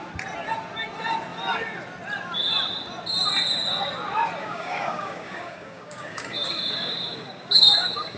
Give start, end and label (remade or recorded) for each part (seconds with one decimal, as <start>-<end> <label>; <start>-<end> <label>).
0.0-4.4 recorded; 4.4-8.2 remade